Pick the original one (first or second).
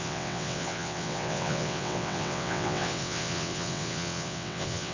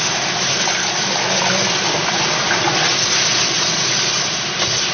second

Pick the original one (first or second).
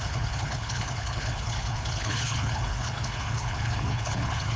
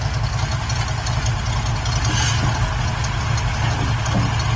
second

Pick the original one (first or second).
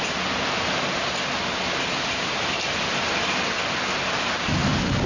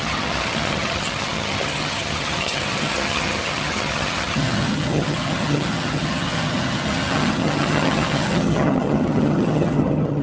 first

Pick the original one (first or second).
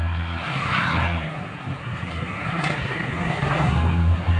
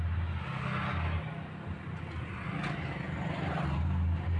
second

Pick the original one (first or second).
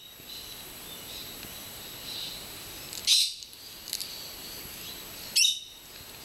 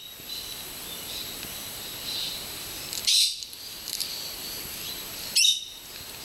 first